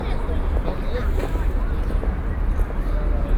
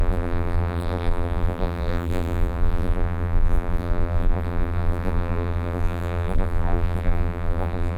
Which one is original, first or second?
first